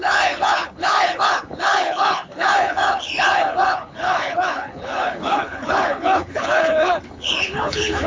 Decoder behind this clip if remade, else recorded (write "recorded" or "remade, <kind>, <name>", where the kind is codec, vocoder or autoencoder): remade, codec, HILCodec